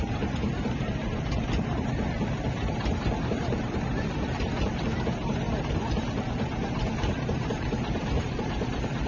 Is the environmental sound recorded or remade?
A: remade